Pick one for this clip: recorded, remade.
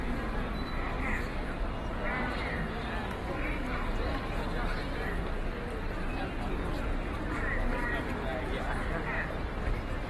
recorded